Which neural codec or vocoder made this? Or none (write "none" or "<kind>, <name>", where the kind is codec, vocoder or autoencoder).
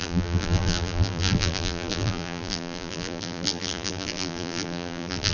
vocoder, BigVGAN v2